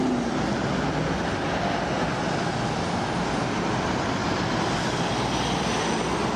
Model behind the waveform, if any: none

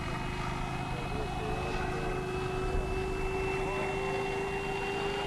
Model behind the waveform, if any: none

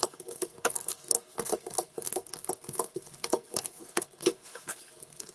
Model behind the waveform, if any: codec, SNAC